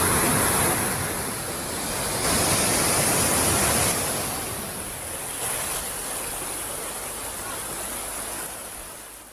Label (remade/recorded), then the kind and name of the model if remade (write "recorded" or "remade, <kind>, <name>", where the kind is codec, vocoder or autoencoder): recorded